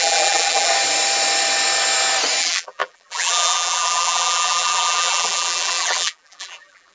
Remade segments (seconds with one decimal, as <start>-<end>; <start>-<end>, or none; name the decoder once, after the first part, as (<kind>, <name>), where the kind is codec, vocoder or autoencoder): 0.0-0.7 (vocoder, BigVGAN v2); 2.4-6.9